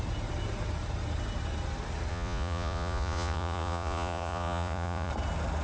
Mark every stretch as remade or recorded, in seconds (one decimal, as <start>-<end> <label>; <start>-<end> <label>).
0.0-2.1 recorded; 2.1-5.1 remade; 5.1-5.6 recorded